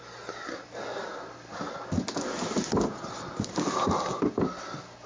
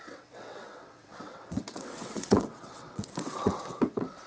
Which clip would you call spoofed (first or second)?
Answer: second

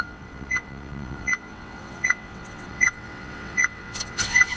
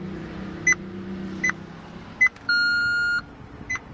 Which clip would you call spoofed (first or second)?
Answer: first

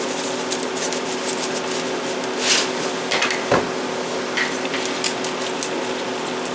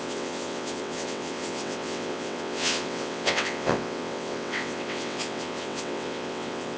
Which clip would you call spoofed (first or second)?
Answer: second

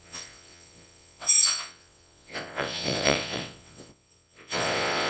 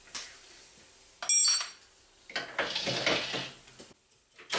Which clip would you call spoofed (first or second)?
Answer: first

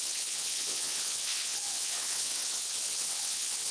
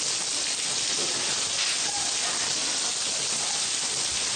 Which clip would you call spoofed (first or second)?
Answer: first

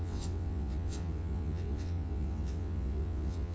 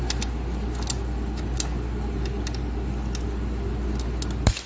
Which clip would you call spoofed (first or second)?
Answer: first